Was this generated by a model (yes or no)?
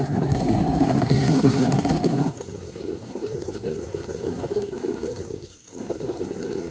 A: yes